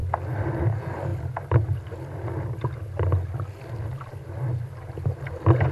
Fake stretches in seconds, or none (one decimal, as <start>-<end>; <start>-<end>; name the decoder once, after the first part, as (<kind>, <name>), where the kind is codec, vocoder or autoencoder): none

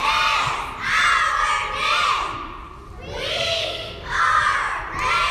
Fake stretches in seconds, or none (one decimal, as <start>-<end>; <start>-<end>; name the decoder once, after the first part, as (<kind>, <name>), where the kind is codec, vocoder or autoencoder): 3.3-4.2 (codec, SNAC)

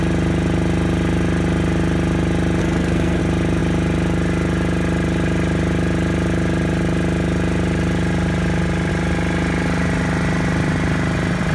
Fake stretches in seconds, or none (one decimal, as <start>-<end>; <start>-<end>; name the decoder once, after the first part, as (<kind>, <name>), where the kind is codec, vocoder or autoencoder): 2.6-3.2 (codec, SNAC)

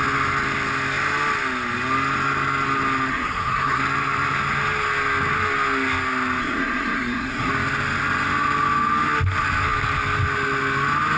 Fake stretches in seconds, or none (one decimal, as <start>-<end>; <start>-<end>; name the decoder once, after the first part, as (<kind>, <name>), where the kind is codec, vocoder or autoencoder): 3.1-3.8 (codec, SNAC); 6.4-7.5

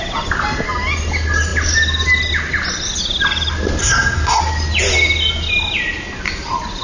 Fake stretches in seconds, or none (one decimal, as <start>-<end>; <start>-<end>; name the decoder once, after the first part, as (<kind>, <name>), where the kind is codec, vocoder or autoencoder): 3.8-4.4 (codec, SNAC)